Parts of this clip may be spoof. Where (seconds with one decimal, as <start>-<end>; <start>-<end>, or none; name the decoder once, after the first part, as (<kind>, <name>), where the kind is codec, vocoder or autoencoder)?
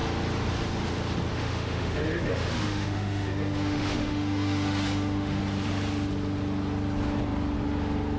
1.3-5.4 (autoencoder, DAC-VAE)